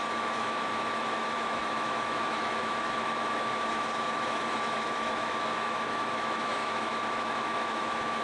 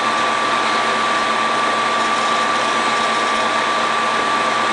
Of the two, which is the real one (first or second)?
second